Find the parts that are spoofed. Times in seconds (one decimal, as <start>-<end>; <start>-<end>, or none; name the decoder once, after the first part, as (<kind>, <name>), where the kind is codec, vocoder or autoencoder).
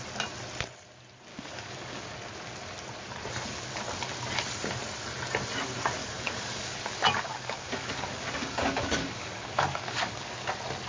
1.3-2.1 (codec, DAC); 6.0-10.5